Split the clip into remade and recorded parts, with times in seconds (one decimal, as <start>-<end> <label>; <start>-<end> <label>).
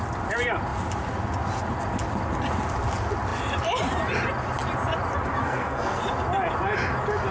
0.0-5.4 recorded; 5.4-6.0 remade; 6.0-7.3 recorded